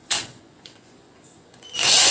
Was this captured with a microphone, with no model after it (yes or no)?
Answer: no